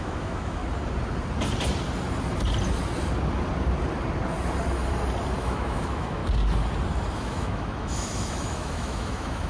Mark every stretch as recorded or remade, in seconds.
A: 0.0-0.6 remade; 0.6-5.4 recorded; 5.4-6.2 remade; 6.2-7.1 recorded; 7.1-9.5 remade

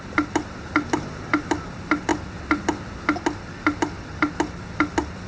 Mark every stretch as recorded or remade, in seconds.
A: 0.0-5.3 recorded

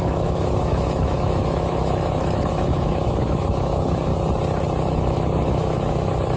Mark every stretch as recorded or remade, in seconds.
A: 0.0-4.1 remade; 4.1-4.8 recorded; 4.8-6.4 remade

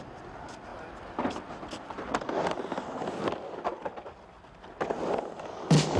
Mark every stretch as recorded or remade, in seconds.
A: 0.0-6.0 recorded

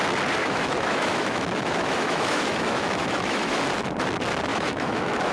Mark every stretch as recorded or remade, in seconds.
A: 0.0-0.4 recorded; 0.4-3.6 remade; 3.6-4.5 recorded; 4.5-5.3 remade

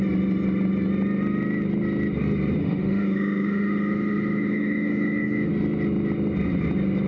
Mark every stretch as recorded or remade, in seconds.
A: 0.0-2.6 recorded; 2.6-5.5 remade; 5.5-7.1 recorded